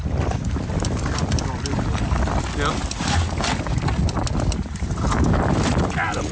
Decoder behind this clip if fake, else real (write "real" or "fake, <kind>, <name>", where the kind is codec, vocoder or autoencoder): real